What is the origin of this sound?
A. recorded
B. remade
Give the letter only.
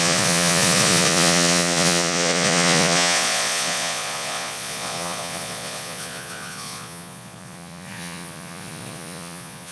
B